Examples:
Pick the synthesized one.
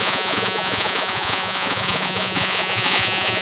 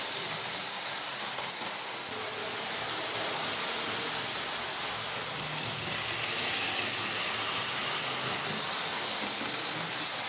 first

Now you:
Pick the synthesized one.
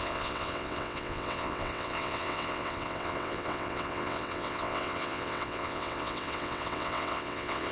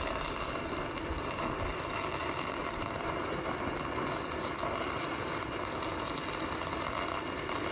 first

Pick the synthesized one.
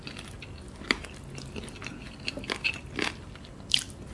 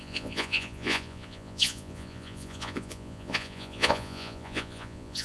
second